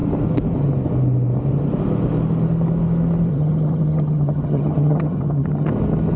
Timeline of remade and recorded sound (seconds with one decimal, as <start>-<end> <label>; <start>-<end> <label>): 0.0-3.3 recorded; 3.3-5.7 remade; 5.7-6.2 recorded